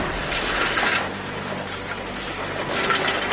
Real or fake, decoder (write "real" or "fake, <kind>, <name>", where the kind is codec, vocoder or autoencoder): real